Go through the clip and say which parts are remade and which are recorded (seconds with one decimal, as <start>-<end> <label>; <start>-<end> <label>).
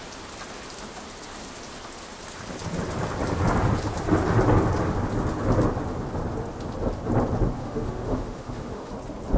0.0-7.6 recorded; 7.6-8.9 remade; 8.9-9.4 recorded